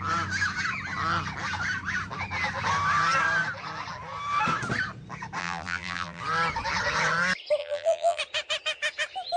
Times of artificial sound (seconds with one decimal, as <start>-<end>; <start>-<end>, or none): 5.4-6.2; 7.6-8.2